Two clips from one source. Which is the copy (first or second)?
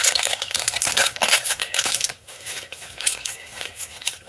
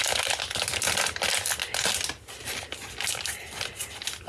first